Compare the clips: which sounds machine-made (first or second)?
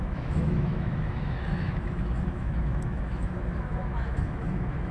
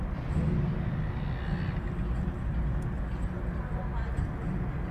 first